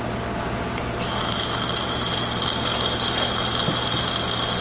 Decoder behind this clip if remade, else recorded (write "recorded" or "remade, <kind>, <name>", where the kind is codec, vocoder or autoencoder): recorded